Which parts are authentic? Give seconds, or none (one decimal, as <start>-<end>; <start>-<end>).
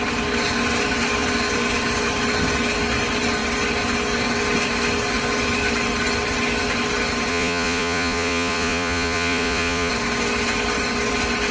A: 0.0-7.3; 9.9-11.5